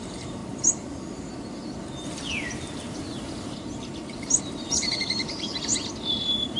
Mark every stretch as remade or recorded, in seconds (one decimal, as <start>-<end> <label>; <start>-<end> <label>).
0.0-0.4 remade; 0.4-4.4 recorded; 4.4-5.5 remade; 5.5-6.6 recorded